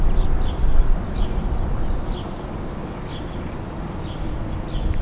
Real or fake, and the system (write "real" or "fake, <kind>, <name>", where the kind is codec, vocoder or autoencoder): real